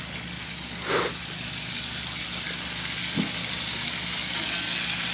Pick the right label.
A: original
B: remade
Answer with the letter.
A